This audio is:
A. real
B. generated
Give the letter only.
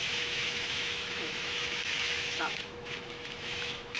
B